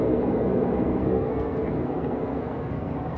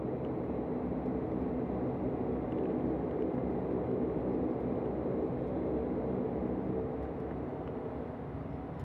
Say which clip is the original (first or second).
second